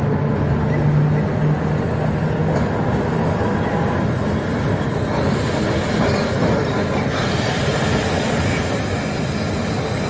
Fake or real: real